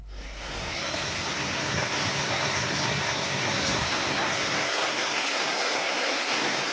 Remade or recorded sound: remade